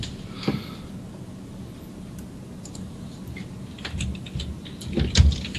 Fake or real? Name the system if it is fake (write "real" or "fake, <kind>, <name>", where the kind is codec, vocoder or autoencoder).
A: real